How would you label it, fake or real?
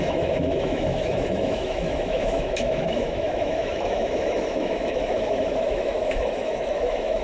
fake